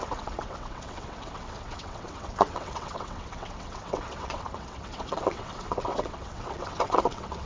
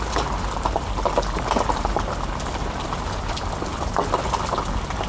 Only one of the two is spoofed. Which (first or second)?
first